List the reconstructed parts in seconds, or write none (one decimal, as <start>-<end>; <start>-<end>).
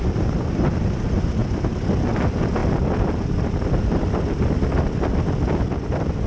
0.0-1.4; 2.1-6.3